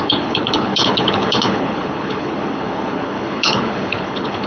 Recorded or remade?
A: remade